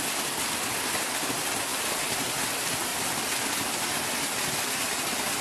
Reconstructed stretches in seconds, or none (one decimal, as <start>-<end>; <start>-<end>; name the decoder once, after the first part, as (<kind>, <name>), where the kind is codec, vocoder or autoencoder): none

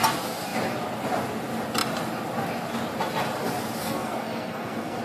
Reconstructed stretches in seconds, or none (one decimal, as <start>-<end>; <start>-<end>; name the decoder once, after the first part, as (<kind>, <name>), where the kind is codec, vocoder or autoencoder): 3.8-5.0 (codec, SNAC)

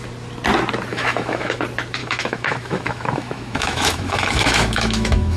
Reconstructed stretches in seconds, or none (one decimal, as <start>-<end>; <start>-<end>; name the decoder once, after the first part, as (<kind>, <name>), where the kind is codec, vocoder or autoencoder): 0.9-1.6 (autoencoder, DAC-VAE); 2.0-5.4

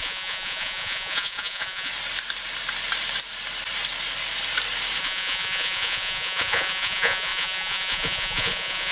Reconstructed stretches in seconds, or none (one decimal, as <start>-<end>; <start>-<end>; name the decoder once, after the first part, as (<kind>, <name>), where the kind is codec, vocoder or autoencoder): 0.0-1.9 (vocoder, Vocos); 5.0-8.9

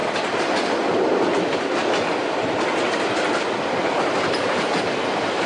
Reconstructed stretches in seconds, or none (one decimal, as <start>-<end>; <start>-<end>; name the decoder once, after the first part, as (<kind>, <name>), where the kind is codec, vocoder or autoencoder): none

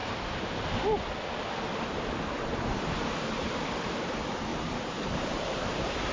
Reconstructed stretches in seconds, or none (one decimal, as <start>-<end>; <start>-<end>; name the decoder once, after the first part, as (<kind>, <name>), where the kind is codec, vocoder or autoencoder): 2.5-4.1 (vocoder, BigVGAN v2); 4.5-6.1

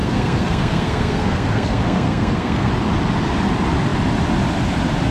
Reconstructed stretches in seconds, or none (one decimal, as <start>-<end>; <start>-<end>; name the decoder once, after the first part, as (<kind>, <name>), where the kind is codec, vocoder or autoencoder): 0.0-2.7 (codec, SNAC)